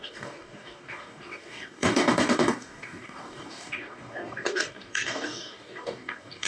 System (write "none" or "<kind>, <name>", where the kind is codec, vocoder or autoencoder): codec, DAC